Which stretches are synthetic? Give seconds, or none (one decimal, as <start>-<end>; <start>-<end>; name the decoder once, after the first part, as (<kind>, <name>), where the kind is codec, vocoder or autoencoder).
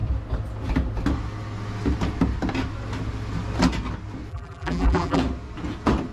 4.3-5.2 (vocoder, BigVGAN v2)